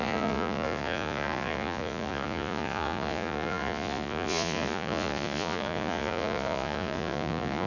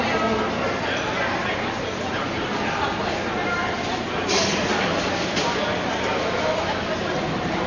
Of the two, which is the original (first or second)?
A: second